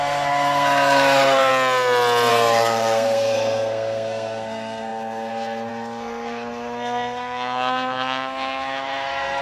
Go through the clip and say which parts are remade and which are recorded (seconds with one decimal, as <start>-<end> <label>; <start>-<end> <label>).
0.0-1.5 remade; 1.5-2.3 recorded; 2.3-9.4 remade